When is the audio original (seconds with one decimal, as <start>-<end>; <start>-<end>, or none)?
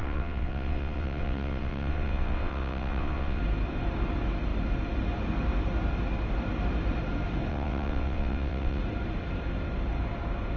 3.4-7.5; 8.8-10.6